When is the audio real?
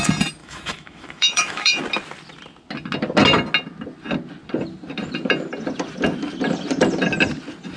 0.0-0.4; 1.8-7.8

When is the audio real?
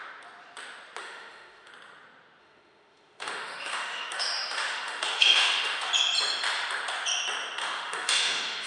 0.0-1.0; 1.7-2.4; 5.9-7.6